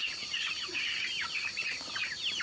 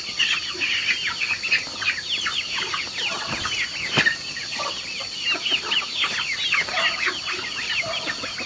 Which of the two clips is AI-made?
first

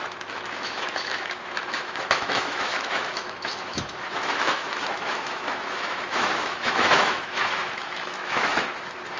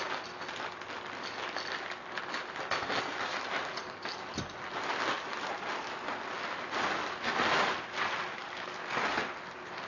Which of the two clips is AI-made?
first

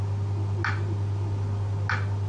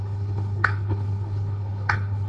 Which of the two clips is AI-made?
second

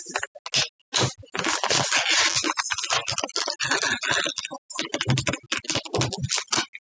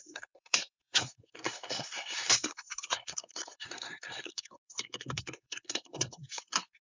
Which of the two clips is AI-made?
second